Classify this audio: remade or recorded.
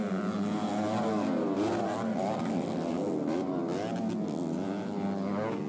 recorded